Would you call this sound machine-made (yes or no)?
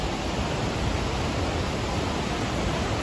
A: no